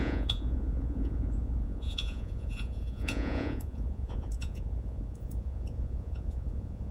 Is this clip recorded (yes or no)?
no